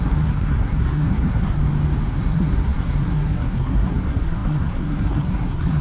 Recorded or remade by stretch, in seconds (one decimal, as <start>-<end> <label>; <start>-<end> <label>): 0.0-1.6 remade; 1.6-2.2 recorded; 2.2-5.8 remade